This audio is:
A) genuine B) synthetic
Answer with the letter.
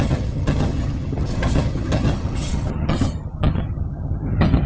B